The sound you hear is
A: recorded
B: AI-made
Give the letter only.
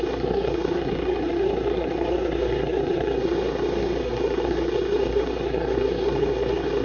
B